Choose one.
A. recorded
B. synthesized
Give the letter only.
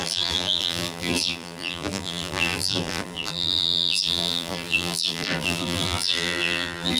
B